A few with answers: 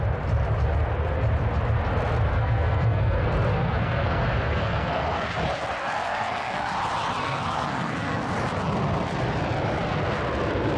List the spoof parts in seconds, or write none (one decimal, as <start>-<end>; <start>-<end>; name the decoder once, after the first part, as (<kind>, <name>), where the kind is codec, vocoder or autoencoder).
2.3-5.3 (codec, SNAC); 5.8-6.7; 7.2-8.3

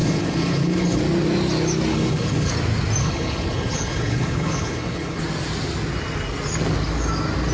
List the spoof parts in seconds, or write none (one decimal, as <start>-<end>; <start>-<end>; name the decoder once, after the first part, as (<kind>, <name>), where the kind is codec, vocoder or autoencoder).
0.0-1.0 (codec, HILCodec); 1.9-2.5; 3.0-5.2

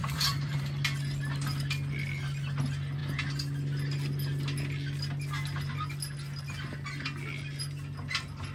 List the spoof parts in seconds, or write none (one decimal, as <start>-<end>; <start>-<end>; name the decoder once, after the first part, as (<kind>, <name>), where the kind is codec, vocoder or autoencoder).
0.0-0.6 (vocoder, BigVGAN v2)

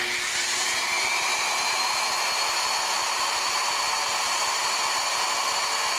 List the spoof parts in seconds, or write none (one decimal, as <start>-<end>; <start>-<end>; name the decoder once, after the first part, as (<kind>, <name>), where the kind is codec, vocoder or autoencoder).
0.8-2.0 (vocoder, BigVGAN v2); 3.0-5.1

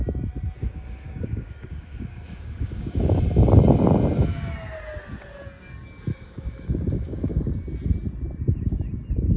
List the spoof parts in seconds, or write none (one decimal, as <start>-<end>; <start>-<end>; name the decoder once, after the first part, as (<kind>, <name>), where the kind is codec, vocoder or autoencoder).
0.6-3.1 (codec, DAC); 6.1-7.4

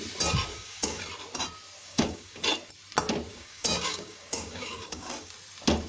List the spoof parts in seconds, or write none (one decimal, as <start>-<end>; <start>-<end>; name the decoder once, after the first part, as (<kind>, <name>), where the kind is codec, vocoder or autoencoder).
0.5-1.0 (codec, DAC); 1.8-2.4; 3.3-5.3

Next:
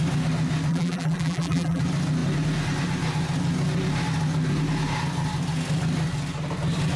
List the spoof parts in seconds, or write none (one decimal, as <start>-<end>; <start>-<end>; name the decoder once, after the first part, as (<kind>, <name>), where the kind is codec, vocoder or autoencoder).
0.7-1.8 (vocoder, BigVGAN v2)